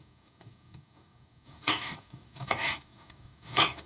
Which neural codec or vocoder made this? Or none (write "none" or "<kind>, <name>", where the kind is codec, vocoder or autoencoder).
codec, DAC